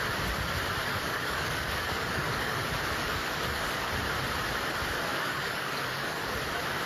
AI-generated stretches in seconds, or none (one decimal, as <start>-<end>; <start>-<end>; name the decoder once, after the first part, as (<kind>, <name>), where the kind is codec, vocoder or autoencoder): 0.8-2.6 (codec, DAC); 3.0-3.8; 5.1-6.4